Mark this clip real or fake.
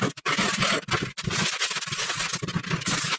real